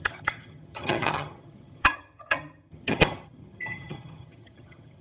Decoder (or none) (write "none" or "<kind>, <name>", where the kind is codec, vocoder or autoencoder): vocoder, HiFi-GAN